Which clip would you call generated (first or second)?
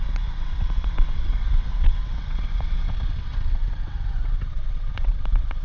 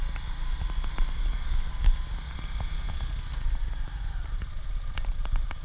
first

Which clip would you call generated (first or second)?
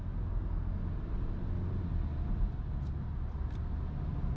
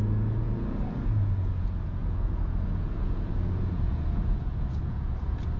second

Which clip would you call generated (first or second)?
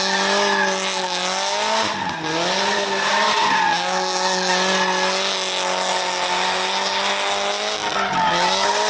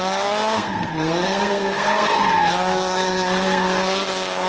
second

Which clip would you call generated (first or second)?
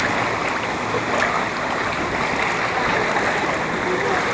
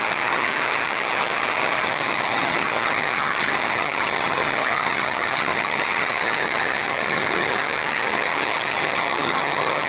second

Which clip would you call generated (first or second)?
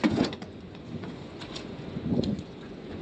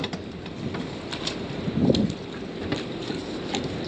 first